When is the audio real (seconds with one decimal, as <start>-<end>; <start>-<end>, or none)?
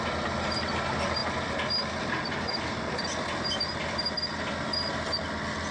0.0-5.7